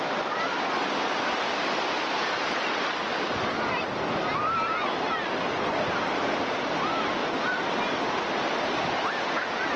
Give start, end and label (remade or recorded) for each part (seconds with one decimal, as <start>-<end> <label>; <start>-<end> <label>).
0.0-9.8 recorded